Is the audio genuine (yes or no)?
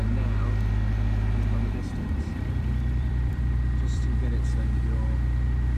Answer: no